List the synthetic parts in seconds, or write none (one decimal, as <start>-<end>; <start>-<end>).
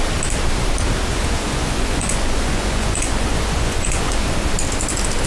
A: 1.1-4.3